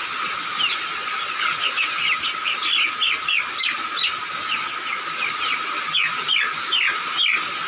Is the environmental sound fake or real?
real